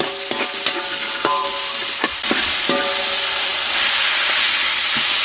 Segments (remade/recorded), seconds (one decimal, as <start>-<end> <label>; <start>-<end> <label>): 0.0-5.2 recorded